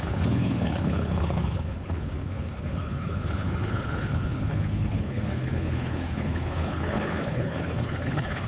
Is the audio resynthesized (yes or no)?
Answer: yes